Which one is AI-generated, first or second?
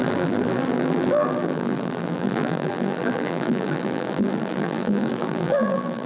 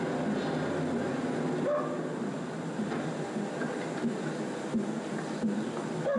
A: first